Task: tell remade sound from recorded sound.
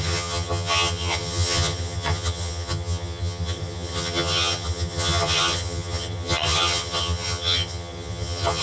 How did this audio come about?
remade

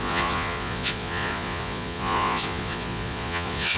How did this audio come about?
remade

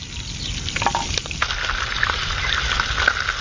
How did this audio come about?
recorded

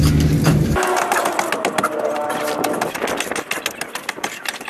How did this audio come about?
recorded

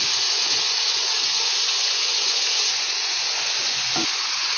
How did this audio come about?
remade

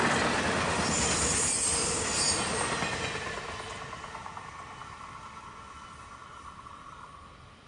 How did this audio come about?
recorded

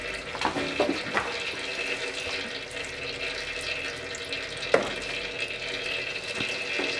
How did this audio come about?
recorded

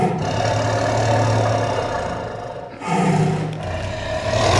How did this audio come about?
recorded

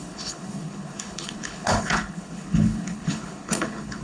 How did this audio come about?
remade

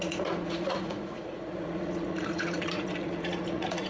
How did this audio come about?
remade